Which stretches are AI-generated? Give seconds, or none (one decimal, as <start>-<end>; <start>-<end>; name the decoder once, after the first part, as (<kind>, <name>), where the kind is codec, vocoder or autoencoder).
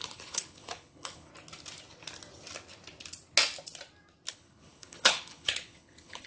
0.0-1.3 (codec, HILCodec); 4.3-6.3